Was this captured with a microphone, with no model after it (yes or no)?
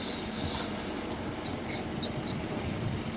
yes